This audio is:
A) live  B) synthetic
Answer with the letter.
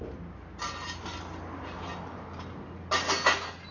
A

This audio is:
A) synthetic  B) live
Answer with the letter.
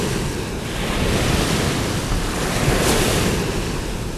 B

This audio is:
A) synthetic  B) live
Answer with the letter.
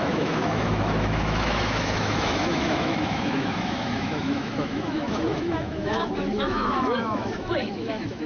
A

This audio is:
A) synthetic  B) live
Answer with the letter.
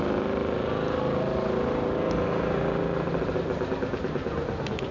B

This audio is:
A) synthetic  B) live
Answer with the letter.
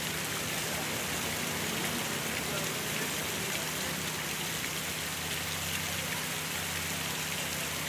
B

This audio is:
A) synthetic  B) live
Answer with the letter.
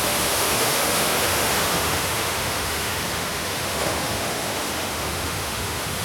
A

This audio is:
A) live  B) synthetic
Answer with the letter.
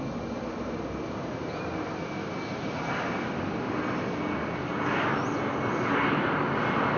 A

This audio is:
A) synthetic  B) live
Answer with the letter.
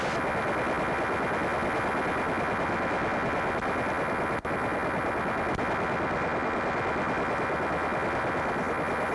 B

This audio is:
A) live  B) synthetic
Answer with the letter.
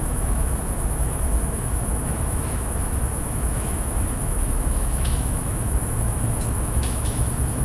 B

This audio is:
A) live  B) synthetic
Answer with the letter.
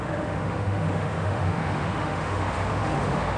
B